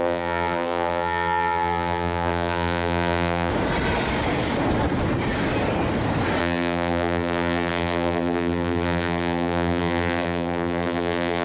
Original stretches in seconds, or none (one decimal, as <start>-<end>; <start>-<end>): 3.5-6.4